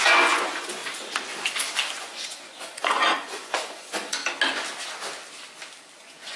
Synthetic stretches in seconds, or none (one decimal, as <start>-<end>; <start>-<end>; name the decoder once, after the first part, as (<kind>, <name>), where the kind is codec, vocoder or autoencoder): 0.0-0.8 (vocoder, Vocos); 2.0-4.2; 6.0-6.4